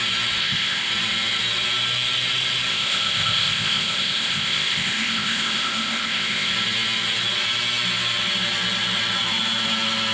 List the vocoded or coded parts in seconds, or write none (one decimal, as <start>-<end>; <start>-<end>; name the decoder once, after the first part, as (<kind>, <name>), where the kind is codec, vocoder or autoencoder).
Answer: 0.4-0.9 (codec, ZipCodec); 2.7-6.5